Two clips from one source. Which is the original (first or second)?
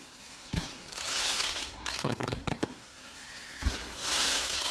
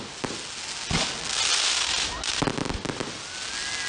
second